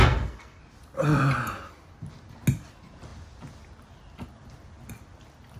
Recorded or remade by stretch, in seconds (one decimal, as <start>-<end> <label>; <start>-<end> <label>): 0.0-0.6 remade; 0.6-5.6 recorded